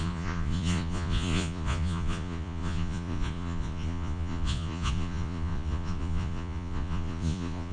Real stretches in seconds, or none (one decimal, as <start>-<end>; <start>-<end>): none